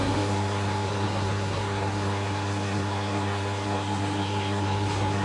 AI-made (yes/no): yes